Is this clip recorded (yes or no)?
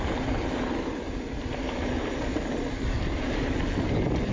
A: yes